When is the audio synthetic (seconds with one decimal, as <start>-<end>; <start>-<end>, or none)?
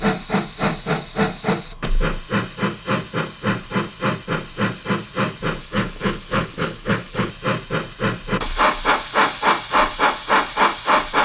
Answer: 5.6-7.3